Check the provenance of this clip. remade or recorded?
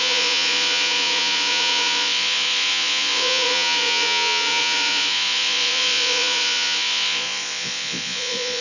remade